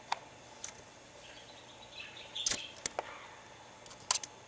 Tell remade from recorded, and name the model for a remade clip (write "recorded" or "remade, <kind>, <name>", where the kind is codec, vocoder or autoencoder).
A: recorded